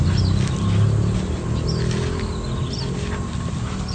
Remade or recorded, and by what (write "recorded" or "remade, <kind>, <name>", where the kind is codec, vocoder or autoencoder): recorded